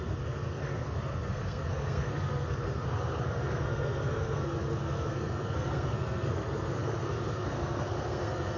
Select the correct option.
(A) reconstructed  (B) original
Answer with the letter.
A